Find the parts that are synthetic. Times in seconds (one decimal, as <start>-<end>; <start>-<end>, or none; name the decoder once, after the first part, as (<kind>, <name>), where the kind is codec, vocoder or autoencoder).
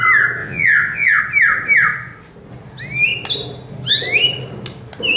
0.4-1.2 (vocoder, Vocos)